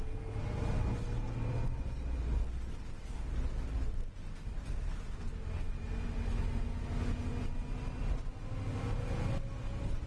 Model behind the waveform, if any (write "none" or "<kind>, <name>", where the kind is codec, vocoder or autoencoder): none